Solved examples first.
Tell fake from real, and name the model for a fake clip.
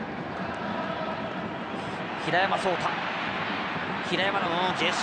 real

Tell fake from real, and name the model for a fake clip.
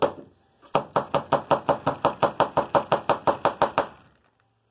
real